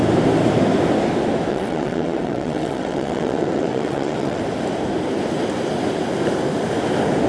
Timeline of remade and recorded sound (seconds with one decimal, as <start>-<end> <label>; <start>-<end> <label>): 0.0-1.5 recorded; 1.5-4.4 remade; 4.4-7.3 recorded